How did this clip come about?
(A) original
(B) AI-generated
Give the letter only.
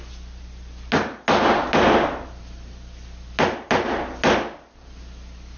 A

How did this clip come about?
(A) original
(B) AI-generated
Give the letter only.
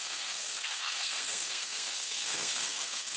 B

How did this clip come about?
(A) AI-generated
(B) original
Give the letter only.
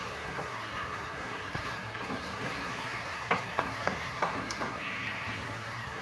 A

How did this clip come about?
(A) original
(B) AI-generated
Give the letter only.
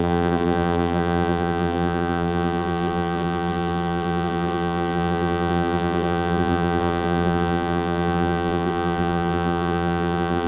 B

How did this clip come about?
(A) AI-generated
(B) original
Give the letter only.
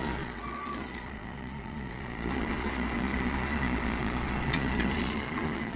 A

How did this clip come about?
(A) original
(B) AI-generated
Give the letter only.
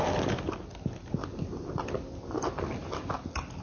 A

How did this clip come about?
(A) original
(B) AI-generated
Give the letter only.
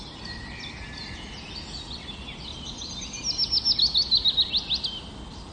A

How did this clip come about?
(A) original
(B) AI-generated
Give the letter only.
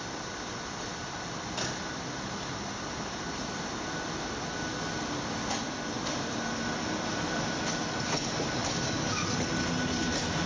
A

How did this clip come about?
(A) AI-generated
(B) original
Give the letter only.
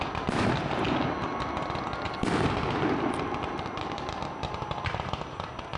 B